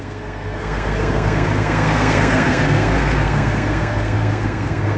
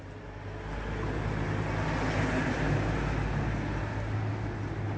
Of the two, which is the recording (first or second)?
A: second